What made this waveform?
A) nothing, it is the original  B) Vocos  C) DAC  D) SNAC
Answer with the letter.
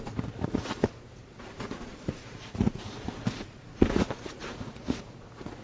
B